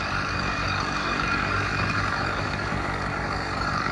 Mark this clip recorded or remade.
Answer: remade